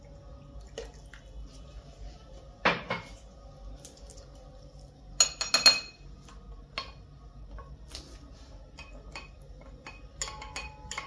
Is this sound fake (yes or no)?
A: no